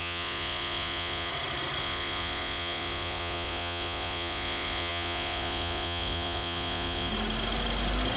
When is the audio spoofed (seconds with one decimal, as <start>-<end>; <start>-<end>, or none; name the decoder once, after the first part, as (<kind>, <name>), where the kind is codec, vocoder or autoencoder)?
0.0-1.3 (vocoder, Vocos); 1.8-7.1